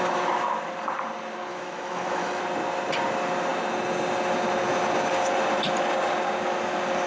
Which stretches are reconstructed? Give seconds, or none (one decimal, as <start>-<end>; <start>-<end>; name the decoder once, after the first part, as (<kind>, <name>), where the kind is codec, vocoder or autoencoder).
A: 1.5-2.4 (autoencoder, DAC-VAE)